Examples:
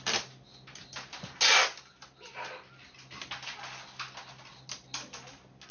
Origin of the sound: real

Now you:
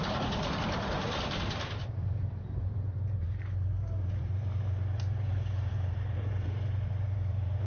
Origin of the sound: fake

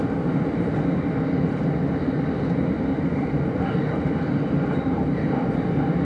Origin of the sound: real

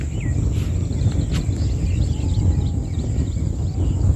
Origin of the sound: real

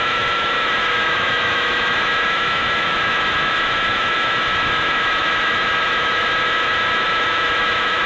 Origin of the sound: fake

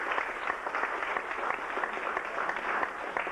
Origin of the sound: real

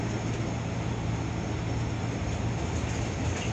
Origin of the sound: real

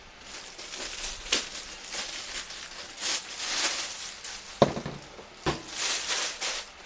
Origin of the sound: real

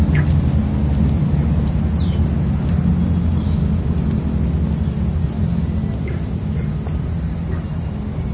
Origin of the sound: real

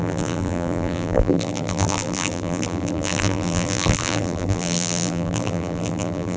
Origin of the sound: fake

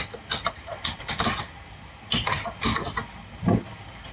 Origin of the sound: real